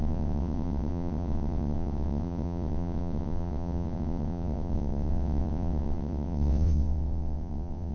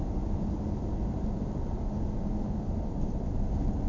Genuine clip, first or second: second